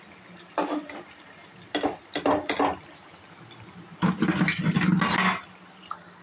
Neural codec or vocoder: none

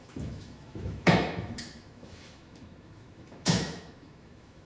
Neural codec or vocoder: autoencoder, DAC-VAE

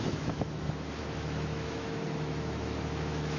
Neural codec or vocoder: autoencoder, DAC-VAE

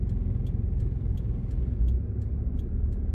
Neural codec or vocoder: none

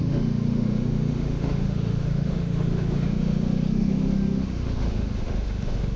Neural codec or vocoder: autoencoder, DAC-VAE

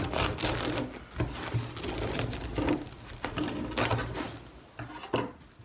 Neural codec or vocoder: none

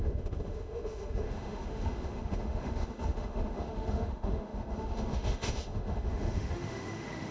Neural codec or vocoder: autoencoder, DAC-VAE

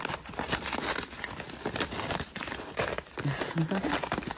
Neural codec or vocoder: none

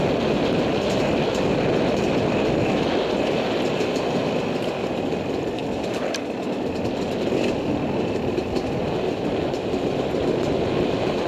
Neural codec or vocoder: none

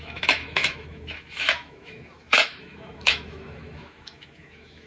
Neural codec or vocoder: autoencoder, DAC-VAE